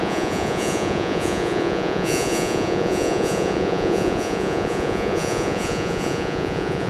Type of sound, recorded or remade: remade